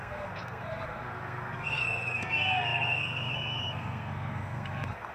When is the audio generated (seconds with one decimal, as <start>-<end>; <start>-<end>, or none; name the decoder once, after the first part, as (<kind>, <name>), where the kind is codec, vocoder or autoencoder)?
0.0-5.1 (codec, SNAC)